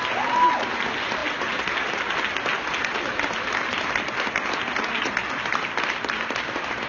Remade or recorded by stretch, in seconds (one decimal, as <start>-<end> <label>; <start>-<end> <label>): 0.0-6.9 recorded